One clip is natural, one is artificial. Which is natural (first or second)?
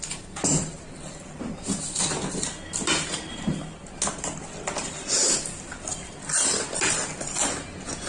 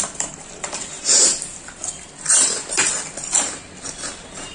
first